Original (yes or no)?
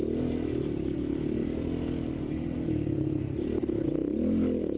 yes